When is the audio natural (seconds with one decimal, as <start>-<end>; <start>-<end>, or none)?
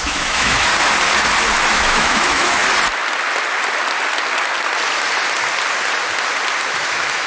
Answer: 0.7-1.7; 2.6-6.7